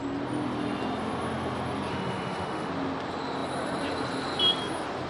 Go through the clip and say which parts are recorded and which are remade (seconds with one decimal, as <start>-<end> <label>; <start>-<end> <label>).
0.0-1.9 recorded; 1.9-2.7 remade; 2.7-5.1 recorded